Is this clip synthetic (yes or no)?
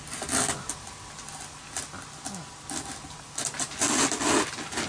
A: no